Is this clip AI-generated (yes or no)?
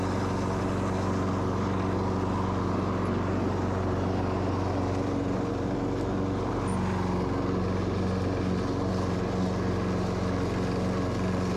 no